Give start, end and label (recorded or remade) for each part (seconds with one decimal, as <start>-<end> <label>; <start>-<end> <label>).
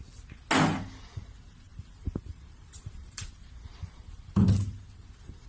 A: 0.0-1.7 recorded; 1.7-3.3 remade; 3.3-5.5 recorded